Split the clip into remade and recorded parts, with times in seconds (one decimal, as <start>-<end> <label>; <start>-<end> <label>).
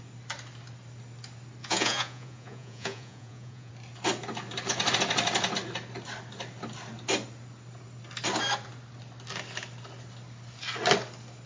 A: 0.0-1.6 recorded; 1.6-3.7 remade; 3.7-11.5 recorded